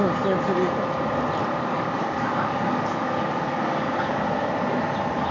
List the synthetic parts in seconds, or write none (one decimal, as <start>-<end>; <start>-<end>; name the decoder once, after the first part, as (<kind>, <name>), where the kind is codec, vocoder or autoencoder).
1.4-4.2 (codec, DAC)